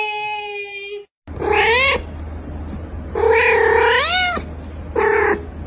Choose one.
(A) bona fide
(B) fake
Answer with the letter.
A